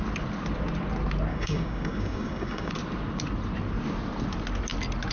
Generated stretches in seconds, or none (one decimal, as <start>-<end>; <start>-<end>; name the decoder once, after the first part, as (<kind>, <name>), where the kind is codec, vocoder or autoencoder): 1.3-2.7 (codec, DAC)